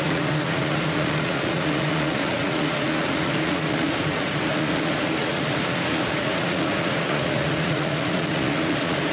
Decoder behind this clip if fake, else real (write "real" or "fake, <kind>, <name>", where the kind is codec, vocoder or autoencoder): fake, vocoder, Vocos